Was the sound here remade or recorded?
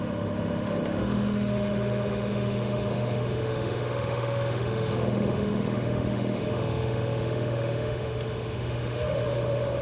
remade